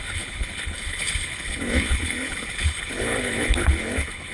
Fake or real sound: fake